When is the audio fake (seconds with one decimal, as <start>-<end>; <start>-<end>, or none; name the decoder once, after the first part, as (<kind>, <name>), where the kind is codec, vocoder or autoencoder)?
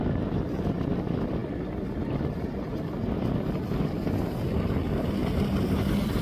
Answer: none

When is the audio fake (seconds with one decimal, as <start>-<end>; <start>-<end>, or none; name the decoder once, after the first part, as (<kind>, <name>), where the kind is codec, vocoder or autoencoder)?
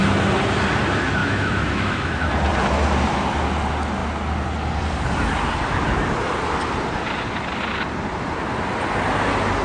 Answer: 1.2-2.3 (autoencoder, DAC-VAE)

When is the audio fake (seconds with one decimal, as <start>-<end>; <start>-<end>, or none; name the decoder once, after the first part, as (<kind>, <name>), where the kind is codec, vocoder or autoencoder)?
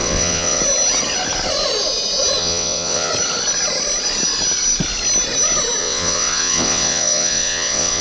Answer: 0.0-0.6 (vocoder, WaveNeXt); 2.4-3.1; 5.8-8.0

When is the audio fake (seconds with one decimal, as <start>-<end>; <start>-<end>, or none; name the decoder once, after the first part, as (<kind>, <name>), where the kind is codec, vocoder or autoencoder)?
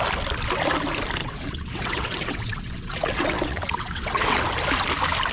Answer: 1.2-4.4 (vocoder, WaveNeXt)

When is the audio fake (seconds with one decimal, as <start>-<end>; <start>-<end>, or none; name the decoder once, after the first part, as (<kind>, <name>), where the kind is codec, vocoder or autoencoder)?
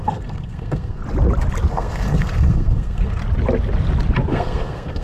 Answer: 0.0-1.0 (codec, SNAC); 1.7-3.2; 4.3-5.0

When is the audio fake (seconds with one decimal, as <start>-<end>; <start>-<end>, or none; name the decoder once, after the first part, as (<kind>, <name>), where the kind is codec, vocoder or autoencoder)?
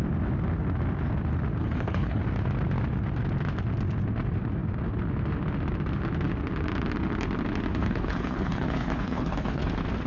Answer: 1.6-2.2 (codec, HILCodec); 7.8-9.7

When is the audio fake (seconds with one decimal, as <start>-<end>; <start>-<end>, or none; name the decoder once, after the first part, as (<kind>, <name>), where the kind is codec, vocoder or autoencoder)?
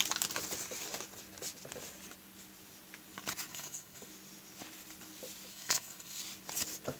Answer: 3.5-4.1 (codec, SNAC); 5.5-6.2